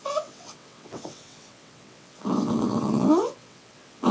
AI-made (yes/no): yes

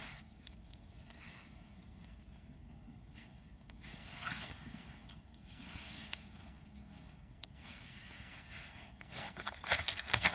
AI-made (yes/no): yes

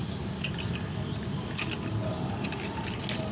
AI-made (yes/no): no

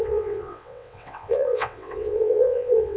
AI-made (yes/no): yes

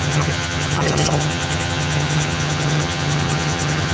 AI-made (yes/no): yes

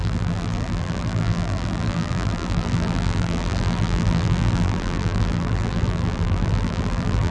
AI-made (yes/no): yes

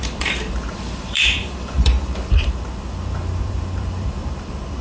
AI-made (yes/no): yes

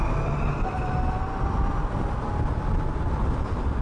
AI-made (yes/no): no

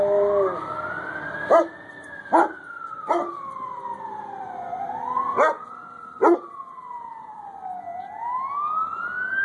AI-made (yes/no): no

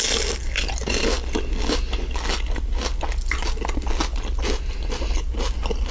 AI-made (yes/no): no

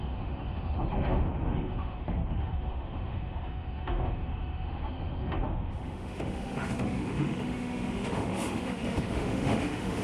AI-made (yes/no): yes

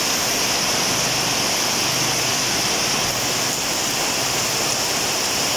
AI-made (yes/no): yes